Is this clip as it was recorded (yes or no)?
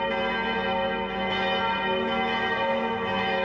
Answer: yes